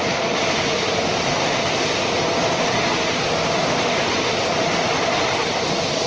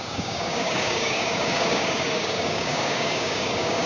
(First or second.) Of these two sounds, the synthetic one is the second